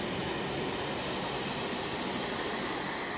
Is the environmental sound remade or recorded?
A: recorded